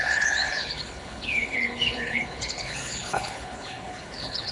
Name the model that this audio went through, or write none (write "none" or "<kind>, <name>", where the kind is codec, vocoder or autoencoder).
codec, HILCodec